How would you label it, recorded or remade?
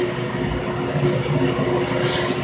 recorded